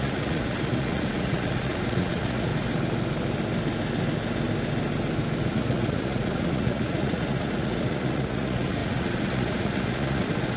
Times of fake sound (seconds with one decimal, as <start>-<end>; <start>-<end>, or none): 0.0-2.5; 5.5-10.6